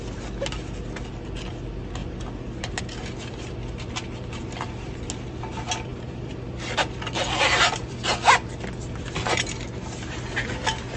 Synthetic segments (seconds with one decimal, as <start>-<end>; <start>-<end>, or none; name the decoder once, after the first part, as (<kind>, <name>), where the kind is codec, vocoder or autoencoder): 5.9-6.5 (vocoder, BigVGAN v2)